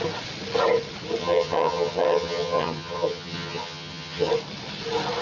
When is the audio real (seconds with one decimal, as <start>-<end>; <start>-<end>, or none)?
0.0-1.2; 4.3-5.2

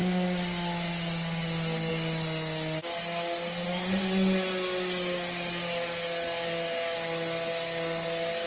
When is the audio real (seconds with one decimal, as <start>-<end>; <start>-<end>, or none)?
0.0-8.5

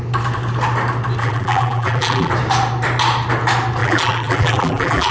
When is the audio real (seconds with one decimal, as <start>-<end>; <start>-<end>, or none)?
0.0-1.2; 2.3-3.8

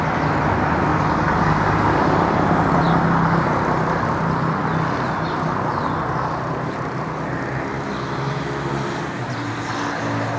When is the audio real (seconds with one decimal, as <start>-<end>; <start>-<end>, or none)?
0.0-0.9; 2.0-10.4

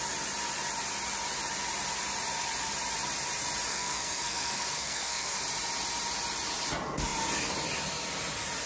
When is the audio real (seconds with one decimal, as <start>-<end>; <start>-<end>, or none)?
0.0-3.7; 5.4-8.7